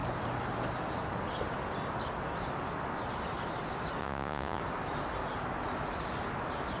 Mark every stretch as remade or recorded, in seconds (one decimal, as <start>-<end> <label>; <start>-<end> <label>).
0.0-4.0 recorded; 4.0-4.6 remade; 4.6-6.8 recorded